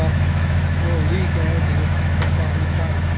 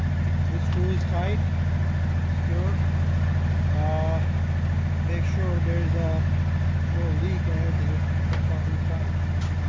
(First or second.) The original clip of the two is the second